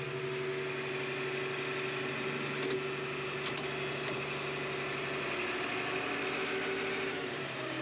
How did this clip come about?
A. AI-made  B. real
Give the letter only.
B